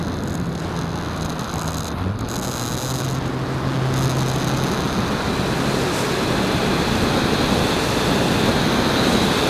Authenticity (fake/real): real